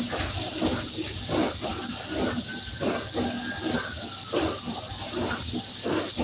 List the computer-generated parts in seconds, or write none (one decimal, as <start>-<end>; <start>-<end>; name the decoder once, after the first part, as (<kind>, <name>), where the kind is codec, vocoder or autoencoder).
none